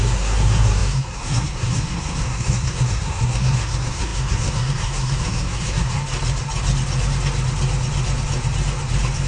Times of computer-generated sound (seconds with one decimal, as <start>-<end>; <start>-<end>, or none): 0.0-6.0